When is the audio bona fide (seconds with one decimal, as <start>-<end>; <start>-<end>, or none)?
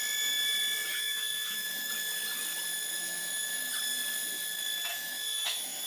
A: 0.0-0.9; 1.9-2.9; 3.7-4.9